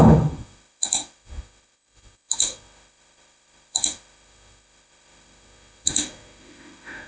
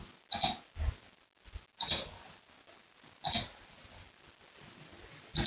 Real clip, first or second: second